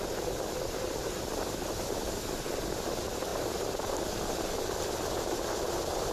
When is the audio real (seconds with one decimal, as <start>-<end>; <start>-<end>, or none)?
none

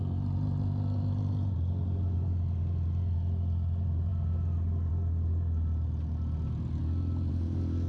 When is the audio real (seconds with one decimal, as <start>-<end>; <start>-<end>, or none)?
0.0-7.9

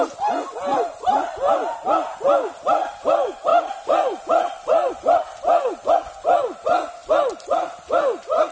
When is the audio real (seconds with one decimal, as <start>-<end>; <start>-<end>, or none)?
0.0-8.5

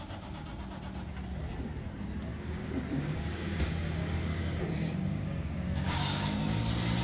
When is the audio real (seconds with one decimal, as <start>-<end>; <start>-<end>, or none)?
0.0-2.3; 3.6-4.0; 6.6-7.0

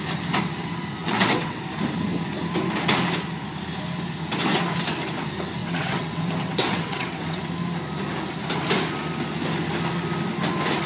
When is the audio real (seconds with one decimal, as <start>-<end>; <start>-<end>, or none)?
0.0-1.0; 1.6-5.6; 7.4-10.9